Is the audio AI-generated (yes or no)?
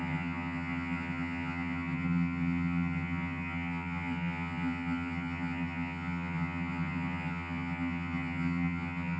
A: yes